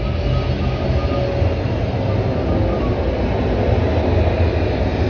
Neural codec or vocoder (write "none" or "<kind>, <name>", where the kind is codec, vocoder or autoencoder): none